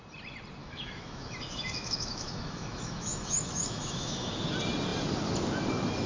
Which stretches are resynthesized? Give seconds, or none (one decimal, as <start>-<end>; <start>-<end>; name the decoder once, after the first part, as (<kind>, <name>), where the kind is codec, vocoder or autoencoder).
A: 0.6-4.3 (autoencoder, DAC-VAE)